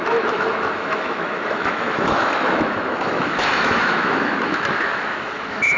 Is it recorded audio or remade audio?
remade